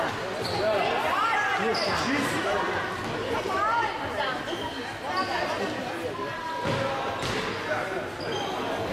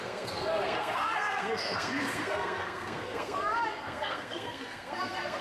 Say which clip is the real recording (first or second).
first